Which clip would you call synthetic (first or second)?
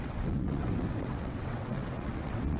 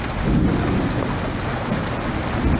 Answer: first